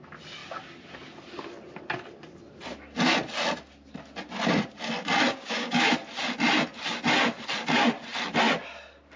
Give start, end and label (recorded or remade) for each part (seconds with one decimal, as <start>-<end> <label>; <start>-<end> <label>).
0.0-5.3 recorded; 5.3-5.9 remade; 5.9-9.2 recorded